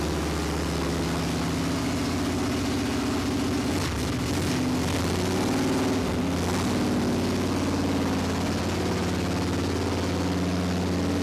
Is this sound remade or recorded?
recorded